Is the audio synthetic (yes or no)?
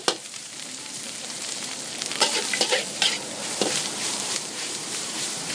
yes